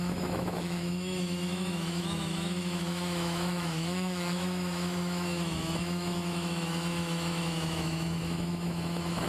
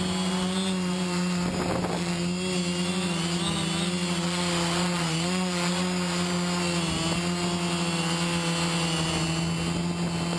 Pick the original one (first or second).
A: second